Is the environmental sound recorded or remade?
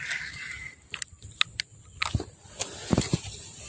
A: recorded